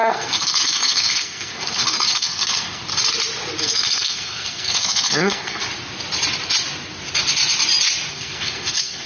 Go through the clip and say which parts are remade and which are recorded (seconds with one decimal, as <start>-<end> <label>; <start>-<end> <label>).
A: 0.0-2.8 remade; 2.8-3.6 recorded; 3.6-5.6 remade; 5.6-8.1 recorded; 8.1-9.1 remade